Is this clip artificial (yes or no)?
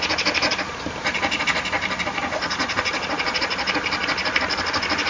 no